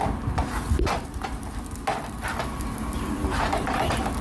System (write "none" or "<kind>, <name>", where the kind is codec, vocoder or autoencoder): none